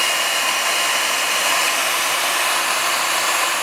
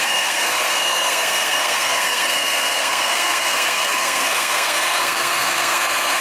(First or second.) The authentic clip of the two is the first